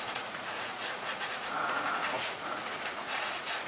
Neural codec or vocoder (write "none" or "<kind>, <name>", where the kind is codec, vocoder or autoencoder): vocoder, Vocos